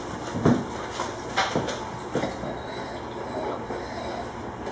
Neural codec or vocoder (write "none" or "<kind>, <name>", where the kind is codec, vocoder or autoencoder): none